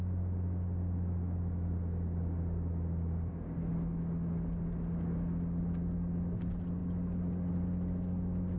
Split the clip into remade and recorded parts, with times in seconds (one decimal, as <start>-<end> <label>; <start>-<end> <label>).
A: 0.0-8.6 recorded